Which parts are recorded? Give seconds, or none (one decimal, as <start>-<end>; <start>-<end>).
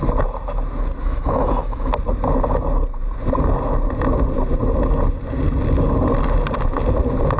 0.0-1.0; 1.9-7.4